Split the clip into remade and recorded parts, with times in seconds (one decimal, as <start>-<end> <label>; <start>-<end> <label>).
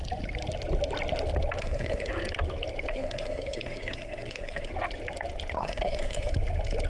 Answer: 0.0-1.6 recorded; 1.6-2.1 remade; 2.1-2.9 recorded; 2.9-4.7 remade; 4.7-5.6 recorded; 5.6-6.3 remade; 6.3-6.9 recorded